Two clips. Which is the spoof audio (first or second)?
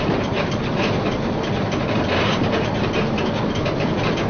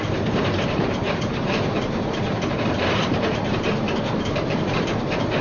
second